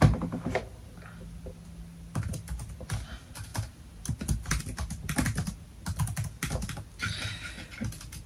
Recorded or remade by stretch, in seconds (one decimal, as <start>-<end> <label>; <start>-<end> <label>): 0.0-8.3 recorded